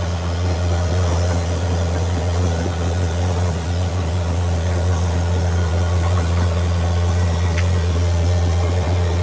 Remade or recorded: remade